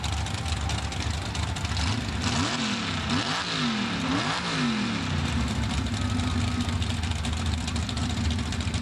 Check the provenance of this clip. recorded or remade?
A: recorded